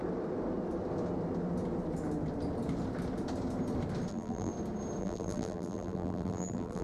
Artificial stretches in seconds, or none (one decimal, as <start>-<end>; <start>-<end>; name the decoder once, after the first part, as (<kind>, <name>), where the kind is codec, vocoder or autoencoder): 4.1-4.5 (vocoder, BigVGAN v2); 5.0-6.8